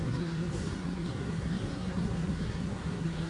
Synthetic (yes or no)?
yes